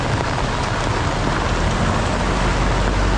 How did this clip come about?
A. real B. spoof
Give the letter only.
A